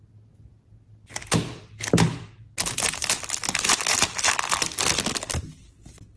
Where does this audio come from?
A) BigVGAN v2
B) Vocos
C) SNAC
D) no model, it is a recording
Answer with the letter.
D